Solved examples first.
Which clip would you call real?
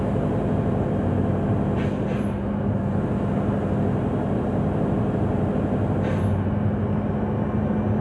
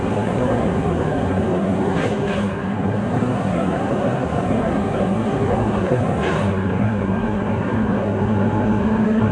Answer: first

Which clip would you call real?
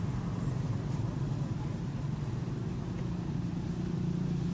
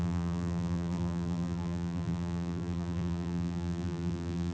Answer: first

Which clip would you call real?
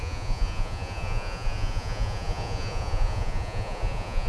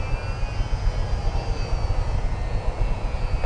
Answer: second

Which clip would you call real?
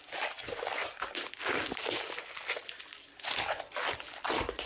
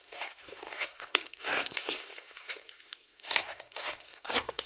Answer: first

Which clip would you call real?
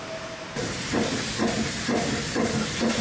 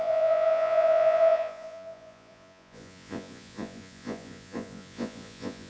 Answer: first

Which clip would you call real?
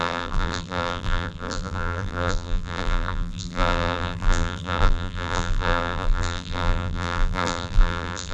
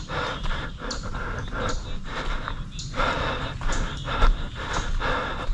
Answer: second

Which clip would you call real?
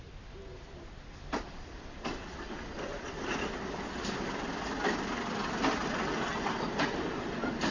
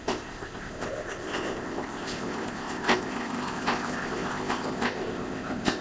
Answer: first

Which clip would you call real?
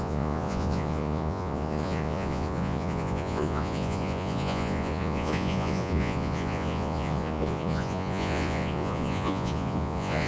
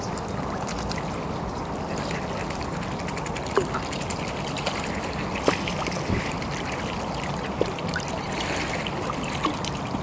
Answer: second